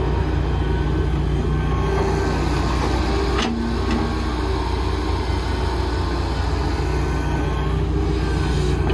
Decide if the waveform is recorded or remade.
recorded